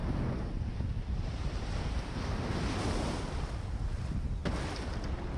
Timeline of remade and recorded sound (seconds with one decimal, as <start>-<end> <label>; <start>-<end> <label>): 0.0-2.5 remade; 2.5-5.4 recorded